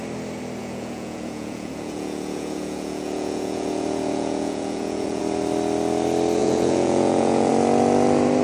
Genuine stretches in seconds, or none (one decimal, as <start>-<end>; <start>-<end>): 0.0-0.6; 5.2-6.4; 7.5-8.4